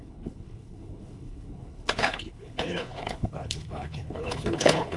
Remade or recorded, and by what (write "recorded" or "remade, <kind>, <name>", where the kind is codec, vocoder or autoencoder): remade, codec, HILCodec